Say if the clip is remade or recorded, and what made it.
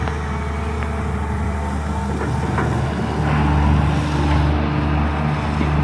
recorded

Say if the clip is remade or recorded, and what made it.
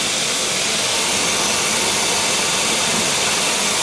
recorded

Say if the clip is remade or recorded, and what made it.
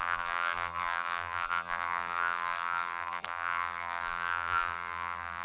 remade, vocoder, BigVGAN v2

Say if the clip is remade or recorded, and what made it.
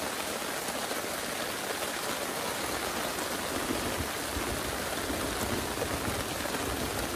recorded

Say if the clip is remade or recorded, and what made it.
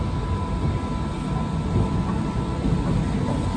recorded